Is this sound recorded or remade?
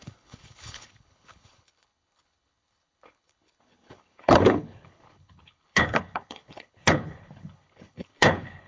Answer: remade